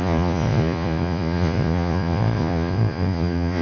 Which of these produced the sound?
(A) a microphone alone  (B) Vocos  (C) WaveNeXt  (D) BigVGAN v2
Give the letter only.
B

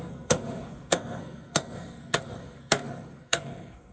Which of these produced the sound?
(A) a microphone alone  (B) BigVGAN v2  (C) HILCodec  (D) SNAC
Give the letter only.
D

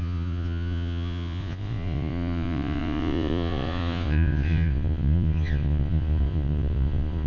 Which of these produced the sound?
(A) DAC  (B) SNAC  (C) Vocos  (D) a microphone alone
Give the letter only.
C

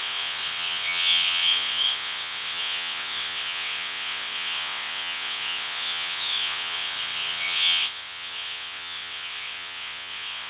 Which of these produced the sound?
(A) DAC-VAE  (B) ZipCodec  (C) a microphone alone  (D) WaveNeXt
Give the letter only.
D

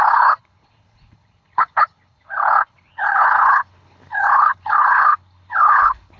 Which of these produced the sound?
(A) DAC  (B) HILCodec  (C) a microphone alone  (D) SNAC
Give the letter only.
B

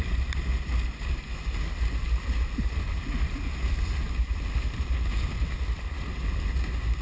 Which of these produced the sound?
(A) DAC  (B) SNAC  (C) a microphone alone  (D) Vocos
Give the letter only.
C